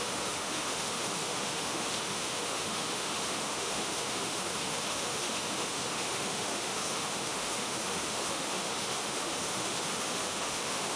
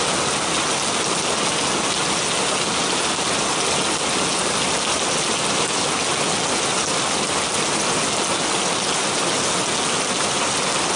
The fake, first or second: first